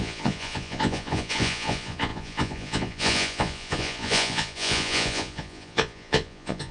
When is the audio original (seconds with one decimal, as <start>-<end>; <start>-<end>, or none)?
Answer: none